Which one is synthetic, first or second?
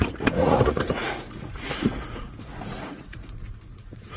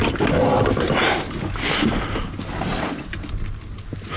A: first